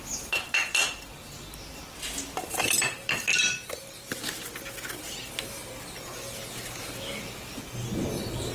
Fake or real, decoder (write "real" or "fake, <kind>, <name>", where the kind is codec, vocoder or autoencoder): real